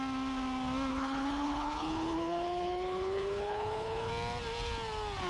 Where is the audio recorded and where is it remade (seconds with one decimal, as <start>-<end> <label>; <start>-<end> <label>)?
0.0-0.9 recorded; 0.9-4.1 remade; 4.1-5.3 recorded